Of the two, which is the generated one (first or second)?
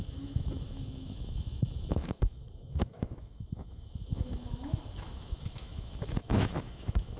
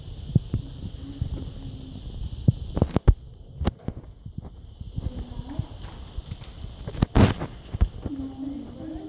first